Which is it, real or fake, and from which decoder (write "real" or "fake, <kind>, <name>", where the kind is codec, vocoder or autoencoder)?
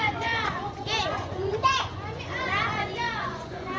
fake, vocoder, Vocos